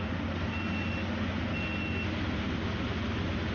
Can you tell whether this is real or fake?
real